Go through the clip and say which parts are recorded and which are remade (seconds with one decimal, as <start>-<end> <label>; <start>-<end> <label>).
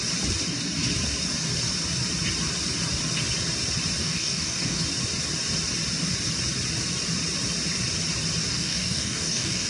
0.0-4.0 recorded; 4.0-4.8 remade; 4.8-8.5 recorded; 8.5-9.7 remade